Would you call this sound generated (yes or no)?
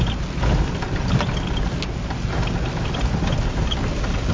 no